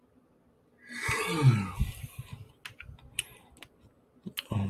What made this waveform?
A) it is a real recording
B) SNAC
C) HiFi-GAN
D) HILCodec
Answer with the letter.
A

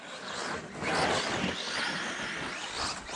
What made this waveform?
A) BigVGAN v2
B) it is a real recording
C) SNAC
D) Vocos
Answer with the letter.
B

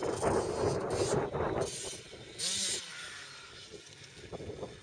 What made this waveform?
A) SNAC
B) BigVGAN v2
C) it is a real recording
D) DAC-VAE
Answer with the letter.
C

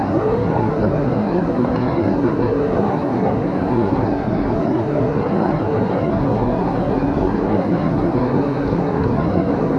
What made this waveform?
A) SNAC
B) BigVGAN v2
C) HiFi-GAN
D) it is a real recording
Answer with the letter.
A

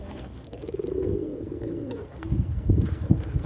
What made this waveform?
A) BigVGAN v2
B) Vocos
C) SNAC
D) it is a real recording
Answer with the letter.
C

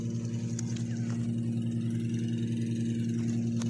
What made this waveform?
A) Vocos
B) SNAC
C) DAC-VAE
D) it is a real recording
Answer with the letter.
D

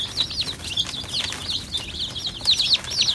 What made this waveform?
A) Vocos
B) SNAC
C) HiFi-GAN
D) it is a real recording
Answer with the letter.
D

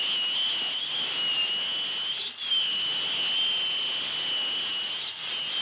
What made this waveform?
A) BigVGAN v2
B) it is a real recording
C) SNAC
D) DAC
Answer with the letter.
B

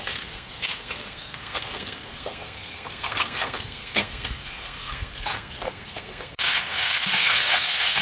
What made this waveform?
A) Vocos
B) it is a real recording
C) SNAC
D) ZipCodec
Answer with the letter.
C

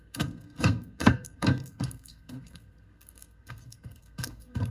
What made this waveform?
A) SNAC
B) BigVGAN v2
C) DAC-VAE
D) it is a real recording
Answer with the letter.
A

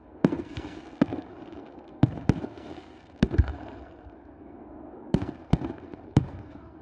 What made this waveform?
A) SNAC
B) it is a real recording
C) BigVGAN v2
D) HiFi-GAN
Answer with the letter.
A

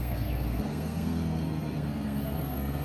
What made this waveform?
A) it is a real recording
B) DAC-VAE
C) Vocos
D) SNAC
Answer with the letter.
D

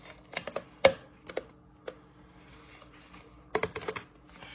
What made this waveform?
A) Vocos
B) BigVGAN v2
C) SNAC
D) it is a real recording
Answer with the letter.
D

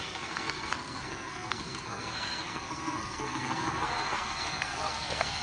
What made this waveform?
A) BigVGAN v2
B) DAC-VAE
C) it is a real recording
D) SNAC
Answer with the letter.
D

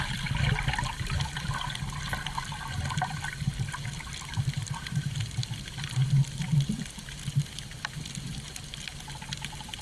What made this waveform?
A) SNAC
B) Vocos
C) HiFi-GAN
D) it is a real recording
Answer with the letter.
D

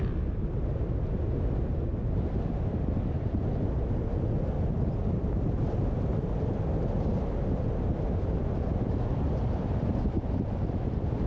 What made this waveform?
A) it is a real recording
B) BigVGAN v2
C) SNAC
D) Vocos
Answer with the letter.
A